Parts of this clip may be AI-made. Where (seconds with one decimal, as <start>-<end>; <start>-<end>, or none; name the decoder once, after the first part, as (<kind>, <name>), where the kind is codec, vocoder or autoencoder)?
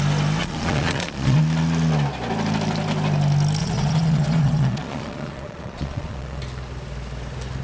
0.4-1.4 (vocoder, Vocos); 3.6-6.4